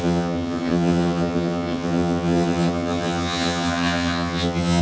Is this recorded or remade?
remade